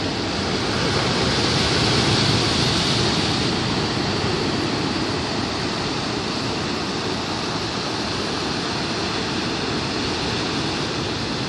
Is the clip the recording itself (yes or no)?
yes